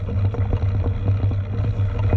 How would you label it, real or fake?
real